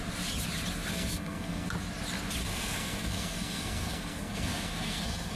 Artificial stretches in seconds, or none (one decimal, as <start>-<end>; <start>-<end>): 0.9-1.7; 2.4-5.4